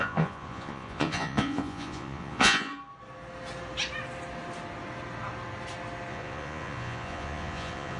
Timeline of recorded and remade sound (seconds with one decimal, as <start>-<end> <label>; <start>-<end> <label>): 0.0-2.7 remade; 2.7-6.1 recorded; 6.1-8.0 remade